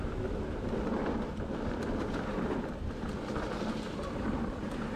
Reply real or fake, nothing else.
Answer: real